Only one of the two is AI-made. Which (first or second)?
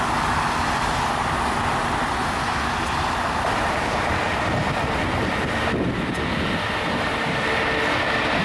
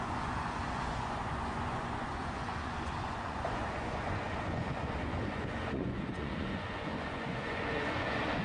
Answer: second